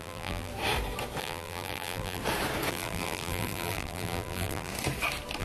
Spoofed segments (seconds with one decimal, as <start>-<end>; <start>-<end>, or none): 0.0-0.5; 1.2-2.2; 2.7-4.7

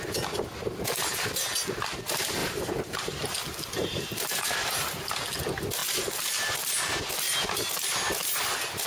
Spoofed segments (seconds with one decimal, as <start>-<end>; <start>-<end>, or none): 2.4-5.1; 5.8-7.0

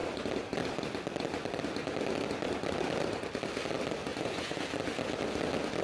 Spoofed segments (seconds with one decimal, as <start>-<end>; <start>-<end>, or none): 4.1-4.6